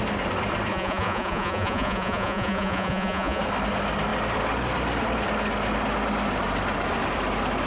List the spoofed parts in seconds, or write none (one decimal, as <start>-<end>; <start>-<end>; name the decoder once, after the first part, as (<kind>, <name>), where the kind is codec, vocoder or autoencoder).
0.7-3.4 (vocoder, Vocos)